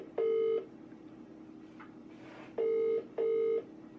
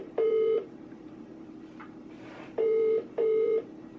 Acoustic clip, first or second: first